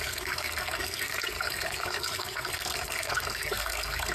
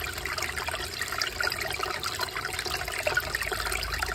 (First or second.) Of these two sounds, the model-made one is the first